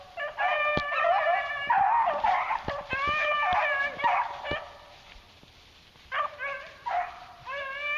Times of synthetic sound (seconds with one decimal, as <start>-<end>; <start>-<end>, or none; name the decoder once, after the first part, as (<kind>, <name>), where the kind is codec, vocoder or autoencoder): none